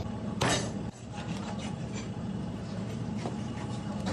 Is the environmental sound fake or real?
fake